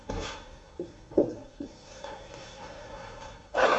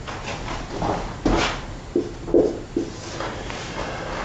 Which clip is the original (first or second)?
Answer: second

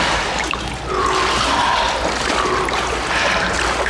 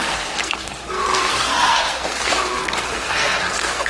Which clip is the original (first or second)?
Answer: first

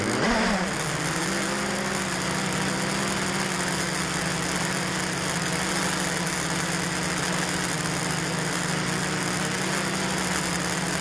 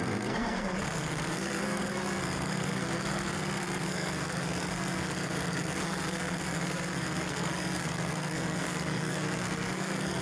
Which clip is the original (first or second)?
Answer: first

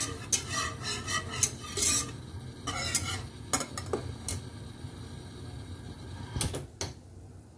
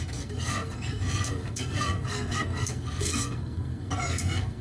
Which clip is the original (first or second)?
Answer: first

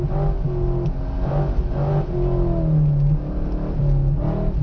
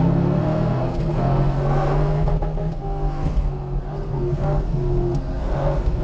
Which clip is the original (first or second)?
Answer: first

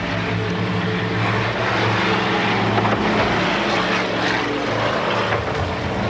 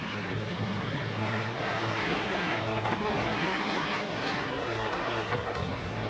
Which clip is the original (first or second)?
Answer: first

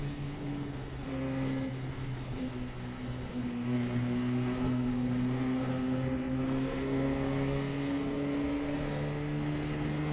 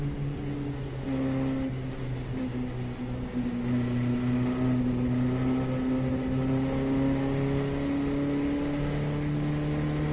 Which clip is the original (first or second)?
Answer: second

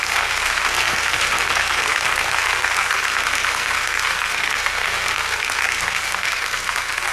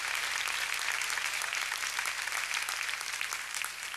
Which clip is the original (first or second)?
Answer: second